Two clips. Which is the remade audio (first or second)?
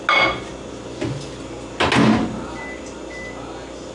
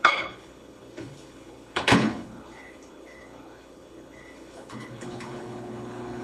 second